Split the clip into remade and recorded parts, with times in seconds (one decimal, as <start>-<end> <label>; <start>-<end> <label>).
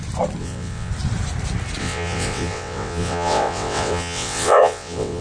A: 0.0-0.4 recorded; 0.4-0.9 remade; 0.9-1.8 recorded; 1.8-5.2 remade